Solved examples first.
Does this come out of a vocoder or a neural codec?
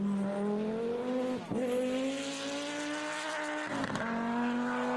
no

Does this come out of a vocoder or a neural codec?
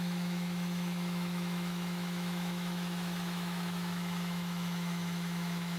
yes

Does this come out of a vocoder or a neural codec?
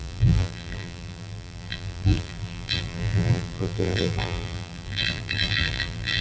yes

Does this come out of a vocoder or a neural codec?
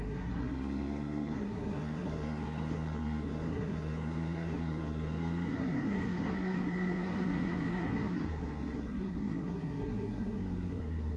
yes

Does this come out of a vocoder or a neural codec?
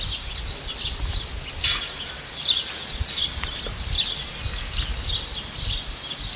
no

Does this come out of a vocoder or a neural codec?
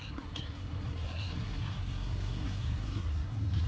yes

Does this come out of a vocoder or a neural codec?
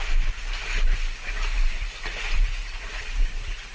no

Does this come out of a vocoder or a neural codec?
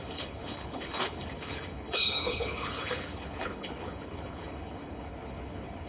yes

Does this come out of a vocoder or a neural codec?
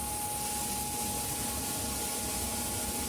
no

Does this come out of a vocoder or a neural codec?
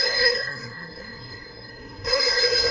yes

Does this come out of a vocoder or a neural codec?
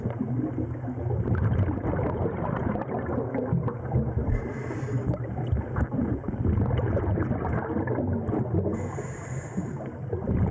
no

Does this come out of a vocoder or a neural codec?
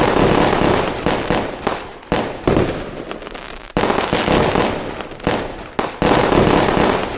no